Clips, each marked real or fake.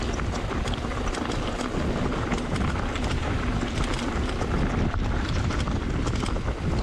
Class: real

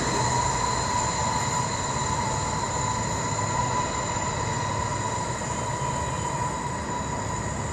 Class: real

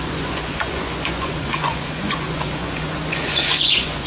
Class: fake